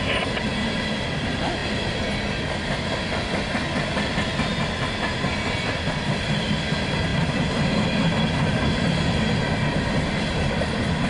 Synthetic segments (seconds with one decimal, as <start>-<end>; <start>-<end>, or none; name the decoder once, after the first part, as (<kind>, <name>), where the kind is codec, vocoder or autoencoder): none